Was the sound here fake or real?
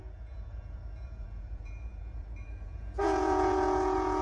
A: fake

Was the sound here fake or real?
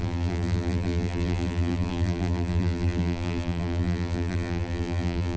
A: fake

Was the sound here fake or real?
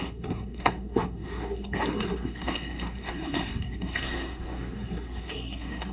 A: fake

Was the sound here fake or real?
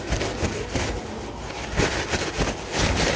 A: real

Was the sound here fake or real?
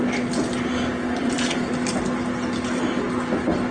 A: real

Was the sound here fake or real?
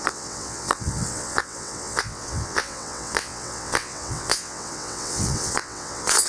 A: fake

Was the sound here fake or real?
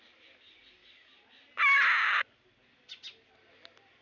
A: real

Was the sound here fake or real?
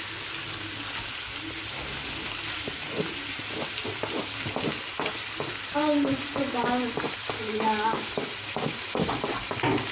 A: real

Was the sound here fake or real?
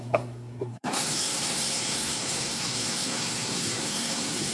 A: fake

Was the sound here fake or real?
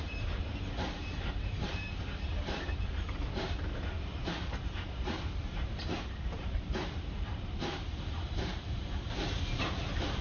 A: fake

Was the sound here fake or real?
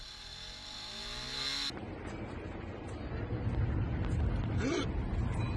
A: real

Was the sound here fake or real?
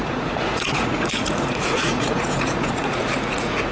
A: fake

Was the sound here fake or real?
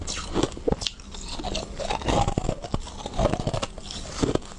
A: real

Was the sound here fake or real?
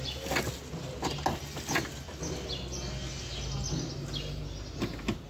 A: real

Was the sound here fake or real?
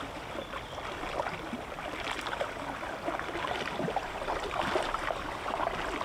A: real